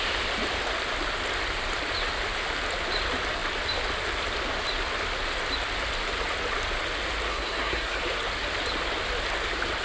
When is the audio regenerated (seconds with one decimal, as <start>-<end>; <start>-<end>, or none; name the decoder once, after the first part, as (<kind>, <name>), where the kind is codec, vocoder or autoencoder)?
7.3-8.0 (codec, SNAC)